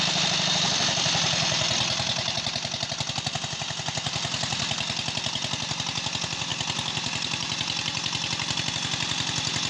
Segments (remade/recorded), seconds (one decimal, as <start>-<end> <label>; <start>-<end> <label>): 0.0-9.7 recorded